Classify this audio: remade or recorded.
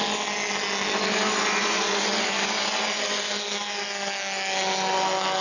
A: recorded